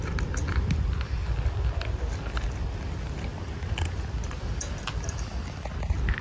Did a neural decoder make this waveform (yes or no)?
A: no